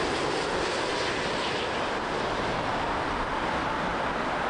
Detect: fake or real real